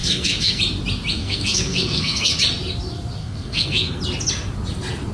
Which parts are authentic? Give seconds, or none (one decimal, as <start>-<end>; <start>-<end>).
0.6-1.1; 2.3-3.2; 4.0-5.1